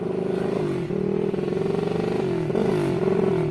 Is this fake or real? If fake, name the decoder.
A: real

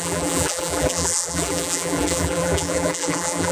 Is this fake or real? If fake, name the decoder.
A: fake, vocoder, BigVGAN v2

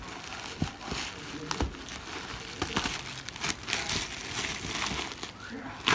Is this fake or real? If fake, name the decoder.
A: real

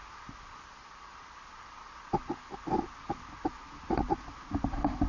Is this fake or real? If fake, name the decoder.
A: real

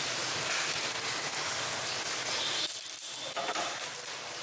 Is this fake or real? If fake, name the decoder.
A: real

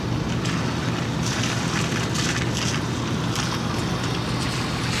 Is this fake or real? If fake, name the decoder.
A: real